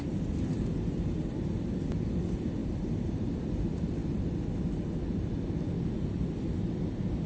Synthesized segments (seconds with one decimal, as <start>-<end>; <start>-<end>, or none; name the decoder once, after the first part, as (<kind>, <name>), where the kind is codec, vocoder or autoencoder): 0.0-4.0 (vocoder, BigVGAN v2); 6.1-7.3